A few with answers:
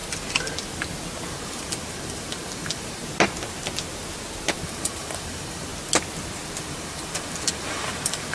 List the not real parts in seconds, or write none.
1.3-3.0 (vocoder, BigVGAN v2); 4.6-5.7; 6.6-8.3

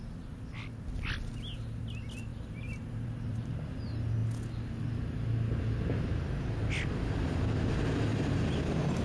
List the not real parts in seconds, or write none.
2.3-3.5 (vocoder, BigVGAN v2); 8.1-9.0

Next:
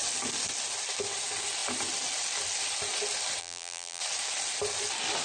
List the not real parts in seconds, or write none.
3.4-4.0 (vocoder, BigVGAN v2)